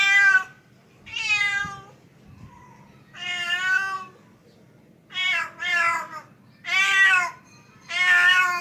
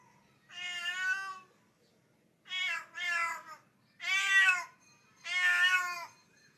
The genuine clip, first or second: second